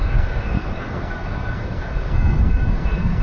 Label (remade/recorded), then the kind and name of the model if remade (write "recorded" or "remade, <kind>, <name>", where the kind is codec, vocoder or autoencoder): remade, codec, SNAC